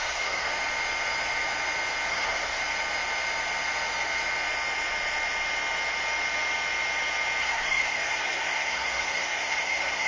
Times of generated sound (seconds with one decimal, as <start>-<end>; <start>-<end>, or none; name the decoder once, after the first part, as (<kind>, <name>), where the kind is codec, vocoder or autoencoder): 0.0-0.5 (codec, SNAC); 2.1-2.6; 7.4-10.1